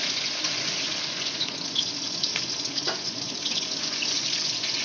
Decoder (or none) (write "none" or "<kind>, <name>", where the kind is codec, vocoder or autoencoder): vocoder, Vocos